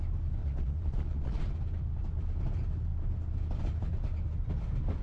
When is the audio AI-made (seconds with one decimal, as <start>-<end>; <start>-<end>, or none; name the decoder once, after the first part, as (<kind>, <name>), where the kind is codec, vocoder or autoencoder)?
0.4-1.4 (vocoder, Vocos)